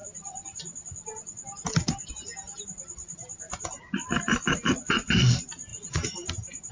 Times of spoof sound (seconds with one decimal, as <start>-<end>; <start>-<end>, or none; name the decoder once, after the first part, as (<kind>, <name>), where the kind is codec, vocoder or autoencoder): none